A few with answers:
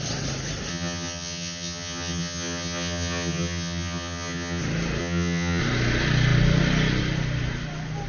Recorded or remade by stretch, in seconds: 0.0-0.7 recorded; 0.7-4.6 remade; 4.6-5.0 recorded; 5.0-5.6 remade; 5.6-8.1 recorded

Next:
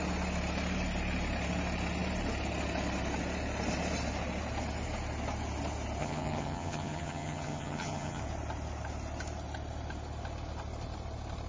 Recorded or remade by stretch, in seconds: 0.0-6.0 recorded; 6.0-8.2 remade; 8.2-11.5 recorded